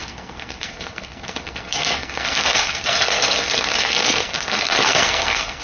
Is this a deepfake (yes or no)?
yes